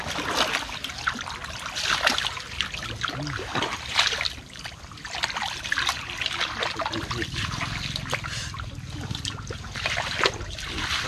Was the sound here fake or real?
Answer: real